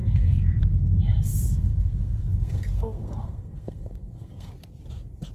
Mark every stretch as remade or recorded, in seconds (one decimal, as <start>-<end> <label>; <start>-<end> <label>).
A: 0.0-0.6 remade; 0.6-1.3 recorded; 1.3-4.5 remade; 4.5-5.3 recorded